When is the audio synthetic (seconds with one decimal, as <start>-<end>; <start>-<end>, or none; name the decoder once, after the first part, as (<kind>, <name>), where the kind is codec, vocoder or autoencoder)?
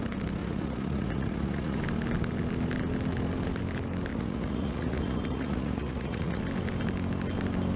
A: 0.4-1.8 (vocoder, Vocos); 4.1-6.4